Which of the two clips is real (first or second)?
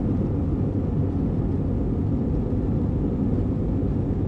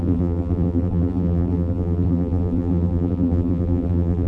first